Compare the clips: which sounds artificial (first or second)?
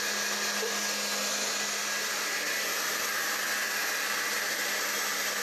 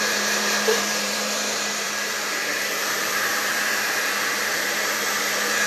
second